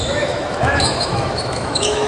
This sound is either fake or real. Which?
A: fake